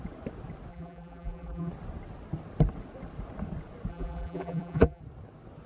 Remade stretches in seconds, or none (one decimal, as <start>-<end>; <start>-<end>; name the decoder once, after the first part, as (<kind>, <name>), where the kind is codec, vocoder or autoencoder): 0.7-1.7 (vocoder, BigVGAN v2); 3.9-5.0